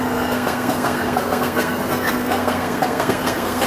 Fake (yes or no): yes